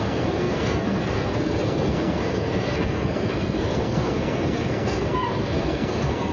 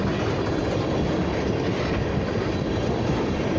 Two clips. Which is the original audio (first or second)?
second